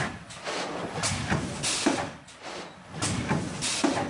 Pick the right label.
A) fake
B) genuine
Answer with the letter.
B